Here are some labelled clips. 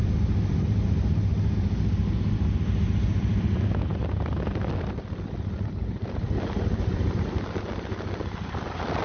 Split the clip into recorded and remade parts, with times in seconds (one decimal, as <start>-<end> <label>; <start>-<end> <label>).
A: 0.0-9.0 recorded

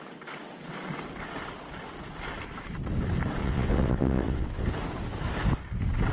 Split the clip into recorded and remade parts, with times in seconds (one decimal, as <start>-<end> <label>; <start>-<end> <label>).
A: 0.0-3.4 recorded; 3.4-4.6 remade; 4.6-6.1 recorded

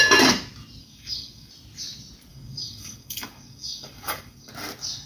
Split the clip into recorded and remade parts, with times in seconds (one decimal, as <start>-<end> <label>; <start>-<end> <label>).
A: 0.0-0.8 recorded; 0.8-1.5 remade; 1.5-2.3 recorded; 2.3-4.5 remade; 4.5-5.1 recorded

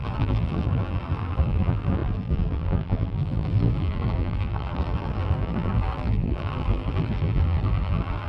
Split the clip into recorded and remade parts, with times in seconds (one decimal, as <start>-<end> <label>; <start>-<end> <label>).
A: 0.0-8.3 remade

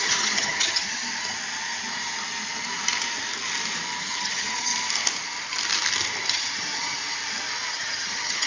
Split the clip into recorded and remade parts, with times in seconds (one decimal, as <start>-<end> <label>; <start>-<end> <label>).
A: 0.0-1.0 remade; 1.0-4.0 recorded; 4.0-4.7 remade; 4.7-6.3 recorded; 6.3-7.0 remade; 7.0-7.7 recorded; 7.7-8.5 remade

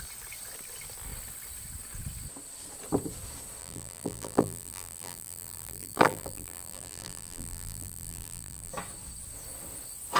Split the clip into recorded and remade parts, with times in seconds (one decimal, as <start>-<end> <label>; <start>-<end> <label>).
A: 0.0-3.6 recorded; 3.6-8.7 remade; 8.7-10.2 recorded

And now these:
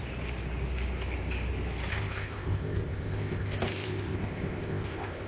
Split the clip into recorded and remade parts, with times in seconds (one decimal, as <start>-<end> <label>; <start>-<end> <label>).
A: 0.0-1.9 recorded; 1.9-5.3 remade

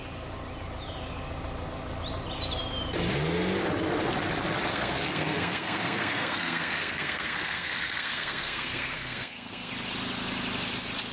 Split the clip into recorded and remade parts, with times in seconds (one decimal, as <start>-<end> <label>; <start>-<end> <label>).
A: 0.0-4.7 recorded; 4.7-9.7 remade; 9.7-11.1 recorded